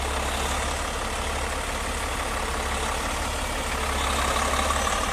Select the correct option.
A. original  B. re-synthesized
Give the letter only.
A